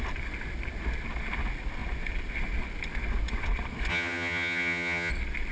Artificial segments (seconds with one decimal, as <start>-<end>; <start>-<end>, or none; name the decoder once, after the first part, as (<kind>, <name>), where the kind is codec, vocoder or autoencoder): 3.9-5.1 (vocoder, HiFi-GAN)